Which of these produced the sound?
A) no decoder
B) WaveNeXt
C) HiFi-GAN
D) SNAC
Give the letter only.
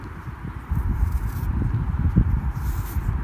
A